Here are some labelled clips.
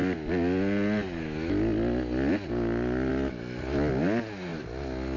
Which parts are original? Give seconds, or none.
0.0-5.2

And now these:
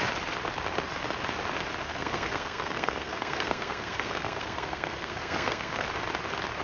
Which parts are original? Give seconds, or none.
0.0-1.9; 5.9-6.6